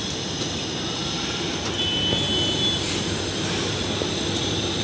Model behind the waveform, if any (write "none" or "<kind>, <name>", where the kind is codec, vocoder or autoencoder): none